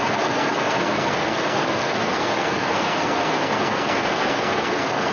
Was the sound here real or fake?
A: fake